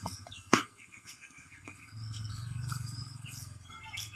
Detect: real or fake fake